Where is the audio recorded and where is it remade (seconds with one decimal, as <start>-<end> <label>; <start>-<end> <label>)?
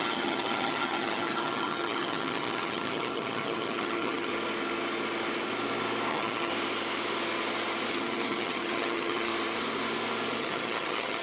0.0-4.3 remade; 4.3-6.1 recorded; 6.1-6.5 remade; 6.5-7.9 recorded; 7.9-9.3 remade; 9.3-10.4 recorded; 10.4-11.2 remade